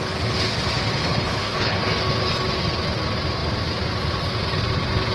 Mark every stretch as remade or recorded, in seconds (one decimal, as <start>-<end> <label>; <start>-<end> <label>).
0.0-1.0 recorded; 1.0-1.8 remade; 1.8-5.1 recorded